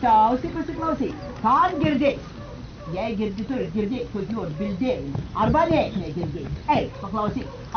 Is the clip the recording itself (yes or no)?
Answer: yes